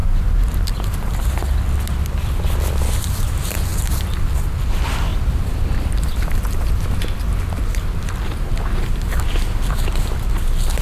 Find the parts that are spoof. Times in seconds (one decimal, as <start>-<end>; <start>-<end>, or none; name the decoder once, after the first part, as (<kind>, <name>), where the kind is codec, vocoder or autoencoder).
0.0-0.8 (vocoder, BigVGAN v2); 5.1-6.8